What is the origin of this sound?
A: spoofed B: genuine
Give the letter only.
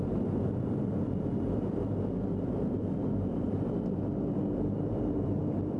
A